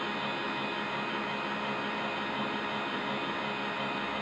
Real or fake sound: real